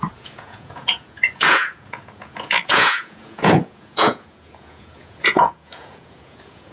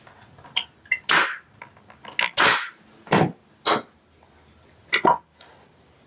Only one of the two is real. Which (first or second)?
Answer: second